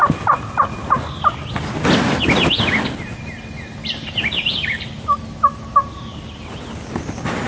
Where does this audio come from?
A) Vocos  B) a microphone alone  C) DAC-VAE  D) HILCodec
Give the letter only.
B